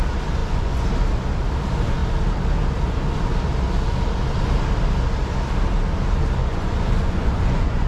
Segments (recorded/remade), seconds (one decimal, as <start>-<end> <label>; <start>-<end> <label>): 0.0-0.4 recorded; 0.4-0.9 remade; 0.9-6.4 recorded; 6.4-7.9 remade